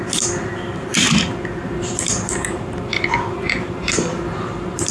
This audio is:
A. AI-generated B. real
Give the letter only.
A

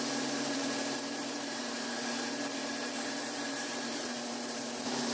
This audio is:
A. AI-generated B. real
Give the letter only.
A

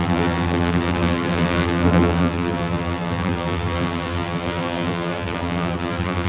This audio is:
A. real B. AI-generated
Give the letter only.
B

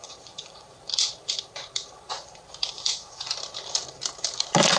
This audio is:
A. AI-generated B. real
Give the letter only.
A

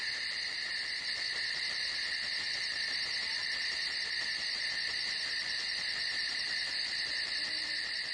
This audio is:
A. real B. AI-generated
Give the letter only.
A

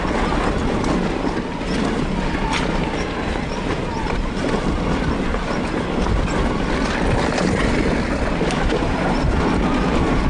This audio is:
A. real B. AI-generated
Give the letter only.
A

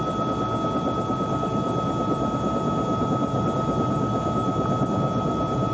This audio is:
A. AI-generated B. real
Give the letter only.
B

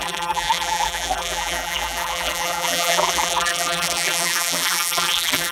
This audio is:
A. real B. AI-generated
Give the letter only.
B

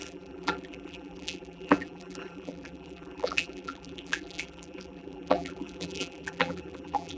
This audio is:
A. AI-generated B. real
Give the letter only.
A